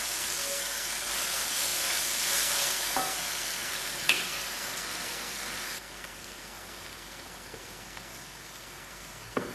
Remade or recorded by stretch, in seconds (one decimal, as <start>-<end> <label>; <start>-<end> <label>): 0.0-9.5 remade